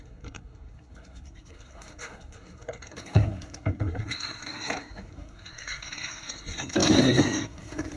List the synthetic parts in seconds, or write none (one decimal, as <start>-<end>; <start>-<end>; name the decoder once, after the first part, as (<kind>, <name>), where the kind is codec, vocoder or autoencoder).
0.0-8.0 (codec, SNAC)